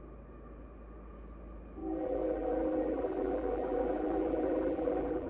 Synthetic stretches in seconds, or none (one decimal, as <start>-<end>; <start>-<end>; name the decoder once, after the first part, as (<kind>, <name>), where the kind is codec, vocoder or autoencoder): 1.8-5.3 (vocoder, BigVGAN v2)

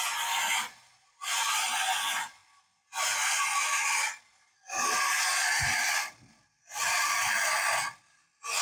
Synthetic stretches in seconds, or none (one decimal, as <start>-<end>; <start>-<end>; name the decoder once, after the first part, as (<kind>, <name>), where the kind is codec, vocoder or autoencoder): none

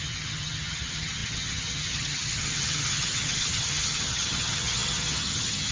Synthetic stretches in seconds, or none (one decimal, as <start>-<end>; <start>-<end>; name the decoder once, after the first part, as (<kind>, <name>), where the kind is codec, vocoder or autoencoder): 0.0-5.7 (vocoder, HiFi-GAN)

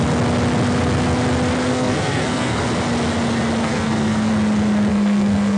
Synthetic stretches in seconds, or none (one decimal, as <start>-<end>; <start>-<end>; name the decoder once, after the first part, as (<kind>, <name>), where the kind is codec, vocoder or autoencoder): 1.7-2.6 (codec, SNAC); 3.6-4.3; 4.9-5.6

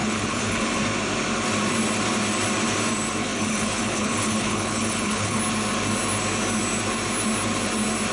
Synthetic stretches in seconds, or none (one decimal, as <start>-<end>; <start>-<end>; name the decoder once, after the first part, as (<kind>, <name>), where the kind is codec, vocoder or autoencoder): 0.0-0.8 (codec, HILCodec); 3.2-5.4